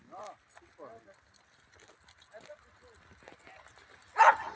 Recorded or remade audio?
recorded